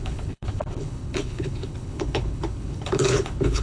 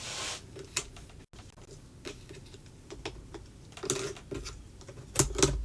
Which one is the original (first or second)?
second